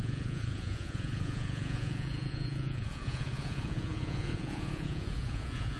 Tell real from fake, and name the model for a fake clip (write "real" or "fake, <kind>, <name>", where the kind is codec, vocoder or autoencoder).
fake, vocoder, Vocos